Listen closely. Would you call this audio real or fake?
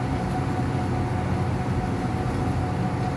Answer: real